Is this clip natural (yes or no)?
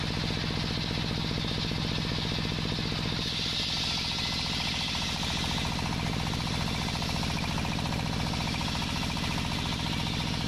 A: yes